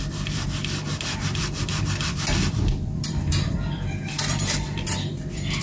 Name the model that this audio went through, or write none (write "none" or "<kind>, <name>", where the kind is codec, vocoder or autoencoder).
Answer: vocoder, BigVGAN v2